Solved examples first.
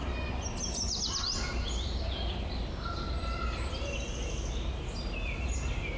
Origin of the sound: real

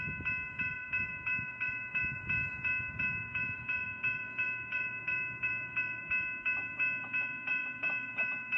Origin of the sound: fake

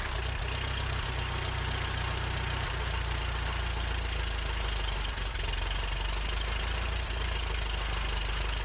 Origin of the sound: real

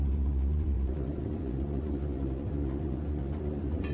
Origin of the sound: fake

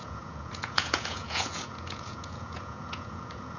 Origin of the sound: fake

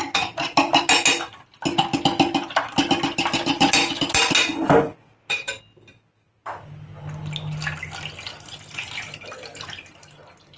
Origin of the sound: real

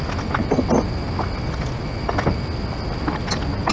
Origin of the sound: real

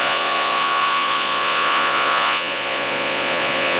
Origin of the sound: fake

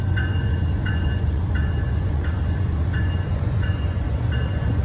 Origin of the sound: fake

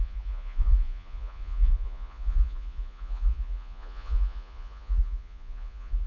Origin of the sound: fake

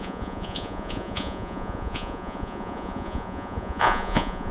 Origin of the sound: fake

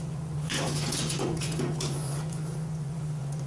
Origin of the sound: fake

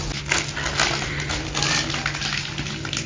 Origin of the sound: real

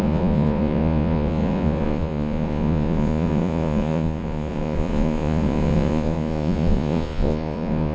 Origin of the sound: fake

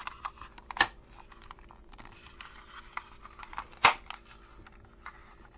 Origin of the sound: real